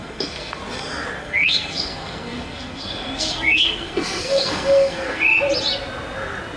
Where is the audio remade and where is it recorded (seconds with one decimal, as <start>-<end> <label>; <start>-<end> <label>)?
0.0-0.6 remade; 0.6-1.2 recorded; 1.2-5.2 remade; 5.2-6.6 recorded